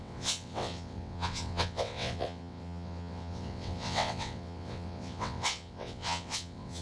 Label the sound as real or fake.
fake